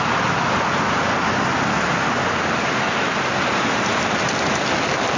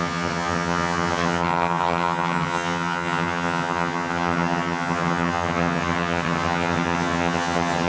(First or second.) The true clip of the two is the first